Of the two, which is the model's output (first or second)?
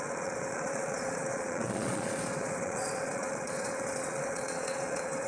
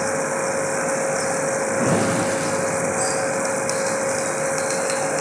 first